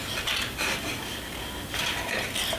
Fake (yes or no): no